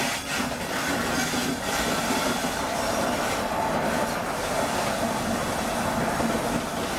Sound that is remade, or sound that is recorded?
recorded